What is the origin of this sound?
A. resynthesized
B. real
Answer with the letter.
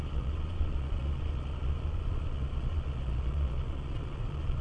A